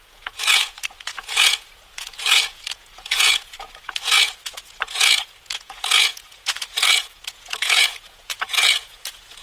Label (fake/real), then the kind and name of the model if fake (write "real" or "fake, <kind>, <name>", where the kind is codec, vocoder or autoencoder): fake, vocoder, Vocos